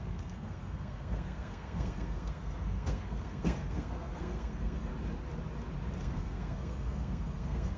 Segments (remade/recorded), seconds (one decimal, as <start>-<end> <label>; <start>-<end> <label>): 0.0-4.9 remade; 4.9-6.0 recorded; 6.0-7.8 remade